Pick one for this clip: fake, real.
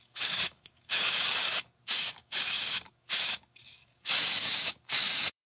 fake